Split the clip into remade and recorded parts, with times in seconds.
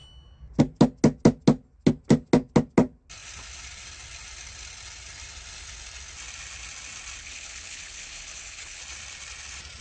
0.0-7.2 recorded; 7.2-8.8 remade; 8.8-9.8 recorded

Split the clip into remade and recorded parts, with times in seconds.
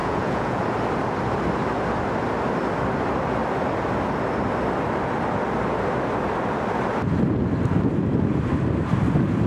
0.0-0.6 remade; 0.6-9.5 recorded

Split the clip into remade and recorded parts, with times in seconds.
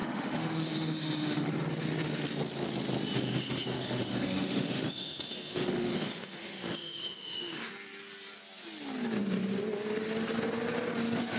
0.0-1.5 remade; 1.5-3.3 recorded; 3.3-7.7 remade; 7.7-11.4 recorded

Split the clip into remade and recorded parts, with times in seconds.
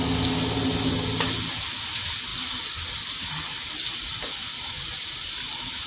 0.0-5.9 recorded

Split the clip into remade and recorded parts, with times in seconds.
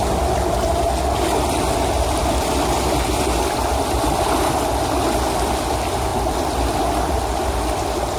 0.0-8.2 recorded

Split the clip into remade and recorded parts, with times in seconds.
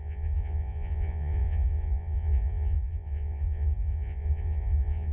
0.0-5.1 remade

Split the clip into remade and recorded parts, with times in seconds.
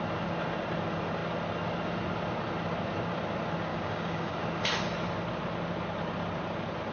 0.0-3.7 recorded; 3.7-4.4 remade; 4.4-6.9 recorded